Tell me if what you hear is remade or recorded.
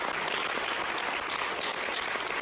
recorded